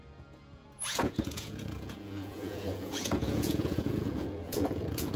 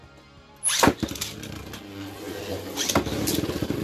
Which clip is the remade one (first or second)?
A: first